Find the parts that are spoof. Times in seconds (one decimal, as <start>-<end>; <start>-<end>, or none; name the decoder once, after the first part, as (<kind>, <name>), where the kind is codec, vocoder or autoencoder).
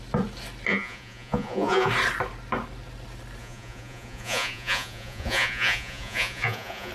0.7-1.9 (vocoder, Vocos); 3.4-6.9